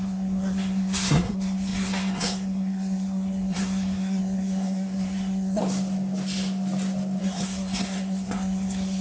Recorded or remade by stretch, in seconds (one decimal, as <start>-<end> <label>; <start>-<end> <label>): 0.0-5.6 remade; 5.6-7.2 recorded; 7.2-9.0 remade